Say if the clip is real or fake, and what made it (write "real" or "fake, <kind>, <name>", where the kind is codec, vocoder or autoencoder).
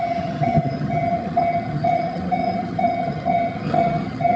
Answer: fake, vocoder, HiFi-GAN